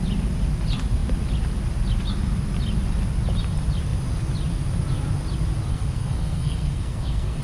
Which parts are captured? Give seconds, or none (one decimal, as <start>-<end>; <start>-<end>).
0.0-5.7